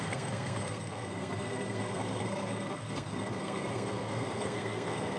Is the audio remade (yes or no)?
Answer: yes